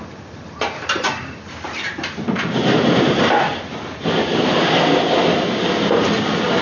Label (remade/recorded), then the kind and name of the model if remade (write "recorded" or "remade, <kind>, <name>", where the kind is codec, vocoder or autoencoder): remade, vocoder, BigVGAN v2